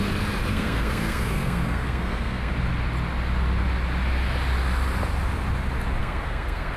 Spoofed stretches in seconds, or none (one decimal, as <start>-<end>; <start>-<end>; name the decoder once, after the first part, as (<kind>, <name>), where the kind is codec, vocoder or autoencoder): 0.5-2.5 (codec, SNAC); 6.0-6.8

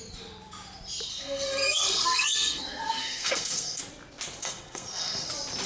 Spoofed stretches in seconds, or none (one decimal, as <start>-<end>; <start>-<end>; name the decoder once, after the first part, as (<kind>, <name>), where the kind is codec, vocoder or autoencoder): 1.1-3.8 (codec, SNAC); 4.4-5.3